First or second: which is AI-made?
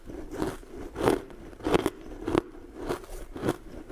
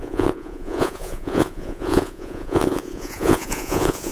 second